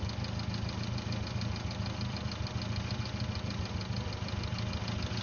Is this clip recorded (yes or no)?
yes